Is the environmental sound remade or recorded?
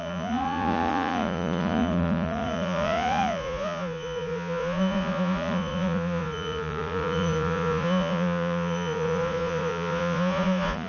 remade